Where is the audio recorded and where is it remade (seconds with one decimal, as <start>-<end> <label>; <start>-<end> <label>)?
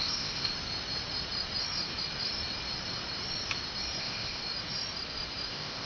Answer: 0.0-0.5 remade; 0.5-4.0 recorded; 4.0-4.4 remade; 4.4-5.5 recorded; 5.5-5.9 remade